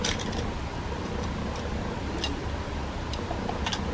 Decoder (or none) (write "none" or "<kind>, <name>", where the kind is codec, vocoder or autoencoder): vocoder, BigVGAN v2